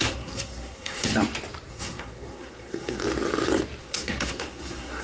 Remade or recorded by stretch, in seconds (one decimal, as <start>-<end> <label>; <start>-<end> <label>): 0.0-1.1 remade; 1.1-1.7 recorded; 1.7-3.0 remade; 3.0-3.8 recorded; 3.8-5.0 remade